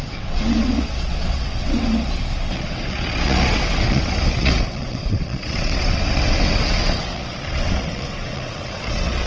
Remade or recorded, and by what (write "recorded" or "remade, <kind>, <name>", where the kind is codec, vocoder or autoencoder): remade, vocoder, WaveNeXt